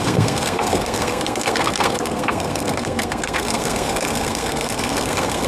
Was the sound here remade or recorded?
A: remade